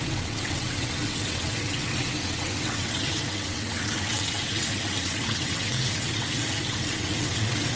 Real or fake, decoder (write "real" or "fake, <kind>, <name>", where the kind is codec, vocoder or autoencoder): fake, vocoder, WaveNeXt